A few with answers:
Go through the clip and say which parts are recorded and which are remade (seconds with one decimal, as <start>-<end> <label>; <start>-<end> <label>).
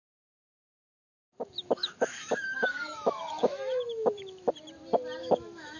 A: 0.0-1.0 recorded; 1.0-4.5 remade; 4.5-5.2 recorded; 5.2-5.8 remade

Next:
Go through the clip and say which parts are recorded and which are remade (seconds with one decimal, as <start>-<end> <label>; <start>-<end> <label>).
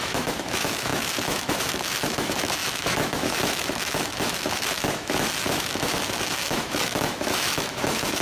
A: 0.0-8.2 remade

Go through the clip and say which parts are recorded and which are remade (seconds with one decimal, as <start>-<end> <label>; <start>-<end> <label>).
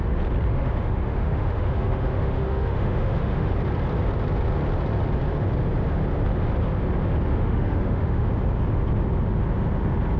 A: 0.0-0.5 recorded; 0.5-3.5 remade; 3.5-7.3 recorded; 7.3-8.3 remade; 8.3-10.2 recorded